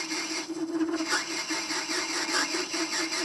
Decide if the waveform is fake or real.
real